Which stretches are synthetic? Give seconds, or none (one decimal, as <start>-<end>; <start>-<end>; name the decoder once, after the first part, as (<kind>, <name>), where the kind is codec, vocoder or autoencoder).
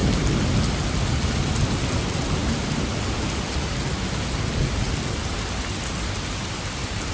none